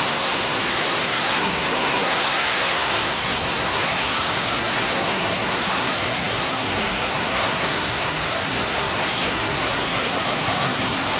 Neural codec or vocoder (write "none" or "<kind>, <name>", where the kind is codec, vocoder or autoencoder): codec, SNAC